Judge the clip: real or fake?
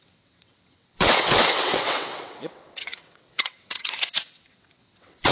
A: fake